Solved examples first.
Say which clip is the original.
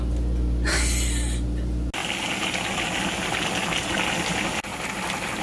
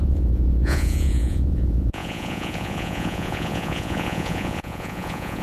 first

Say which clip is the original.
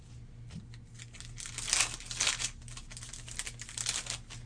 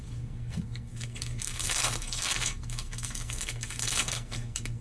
first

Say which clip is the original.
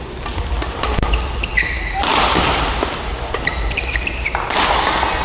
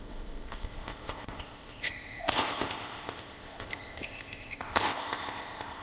first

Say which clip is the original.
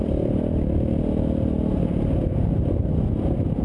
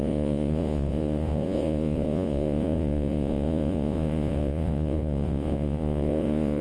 first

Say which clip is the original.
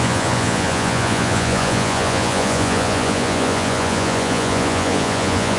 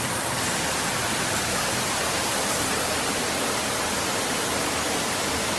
second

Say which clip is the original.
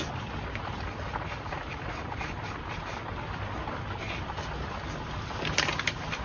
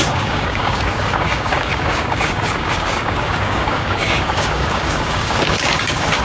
first